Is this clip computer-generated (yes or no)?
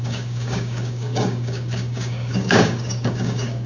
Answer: yes